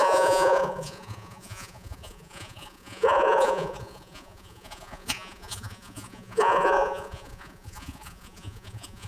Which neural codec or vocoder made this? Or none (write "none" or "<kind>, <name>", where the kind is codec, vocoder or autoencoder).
vocoder, Vocos